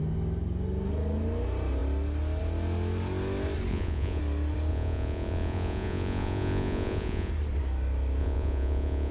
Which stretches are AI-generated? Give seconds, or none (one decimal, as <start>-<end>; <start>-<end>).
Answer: 3.7-4.2; 4.7-7.3; 8.2-9.1